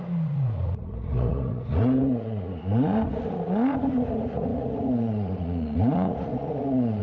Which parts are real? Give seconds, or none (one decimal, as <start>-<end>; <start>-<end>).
none